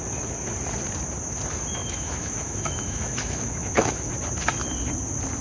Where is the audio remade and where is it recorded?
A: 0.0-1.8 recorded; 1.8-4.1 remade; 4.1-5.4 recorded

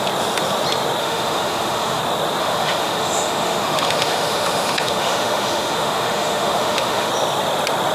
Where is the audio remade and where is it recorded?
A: 0.0-1.0 recorded; 1.0-2.0 remade; 2.0-2.4 recorded; 2.4-7.1 remade; 7.1-7.9 recorded

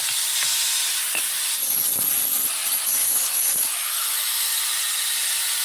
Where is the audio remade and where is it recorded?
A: 0.0-3.0 recorded; 3.0-4.6 remade; 4.6-5.6 recorded